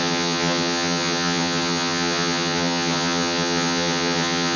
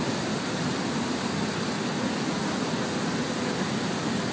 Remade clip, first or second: first